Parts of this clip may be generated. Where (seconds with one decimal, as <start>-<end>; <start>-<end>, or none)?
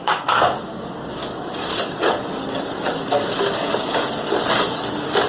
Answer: 0.0-0.6; 1.6-4.8